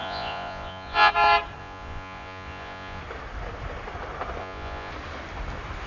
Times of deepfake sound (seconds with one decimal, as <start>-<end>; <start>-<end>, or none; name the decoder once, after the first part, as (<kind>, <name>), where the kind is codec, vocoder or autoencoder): 0.0-1.1 (vocoder, Vocos); 1.6-3.0; 4.4-4.9